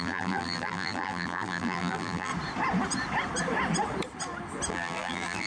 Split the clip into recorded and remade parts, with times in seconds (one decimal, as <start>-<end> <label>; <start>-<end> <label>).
0.0-2.3 remade; 2.3-4.7 recorded; 4.7-5.5 remade